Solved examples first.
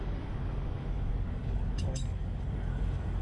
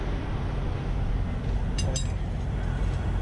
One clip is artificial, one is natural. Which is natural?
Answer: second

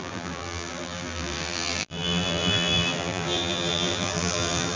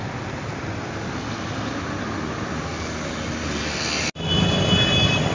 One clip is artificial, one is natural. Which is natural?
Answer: second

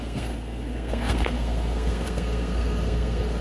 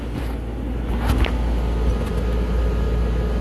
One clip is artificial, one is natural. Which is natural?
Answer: second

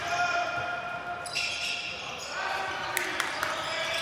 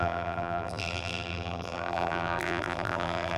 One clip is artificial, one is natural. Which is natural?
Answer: first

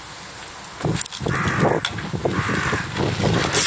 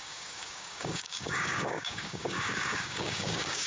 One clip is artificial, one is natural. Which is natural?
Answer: first